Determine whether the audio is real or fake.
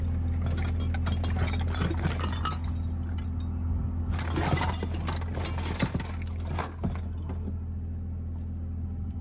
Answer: real